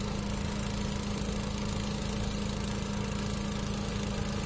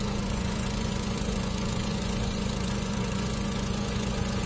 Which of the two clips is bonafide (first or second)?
first